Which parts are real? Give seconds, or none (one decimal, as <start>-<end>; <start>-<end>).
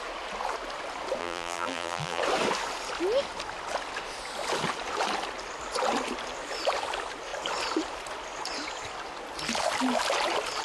0.0-1.2; 2.2-10.6